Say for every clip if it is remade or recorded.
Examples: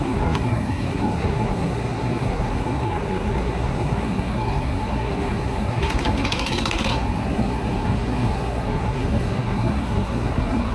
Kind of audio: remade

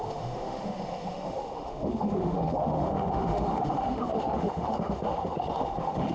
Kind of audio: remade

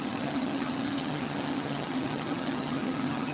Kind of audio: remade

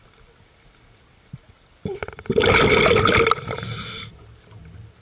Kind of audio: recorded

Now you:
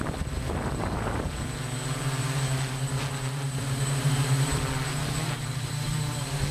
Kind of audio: remade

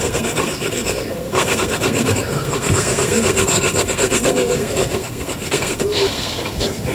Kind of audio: remade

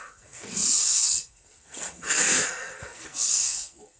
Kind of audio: remade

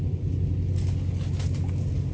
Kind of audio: recorded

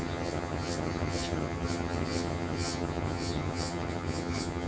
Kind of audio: remade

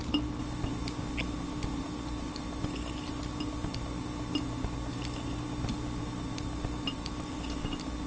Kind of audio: recorded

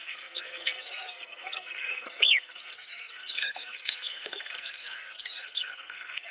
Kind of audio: remade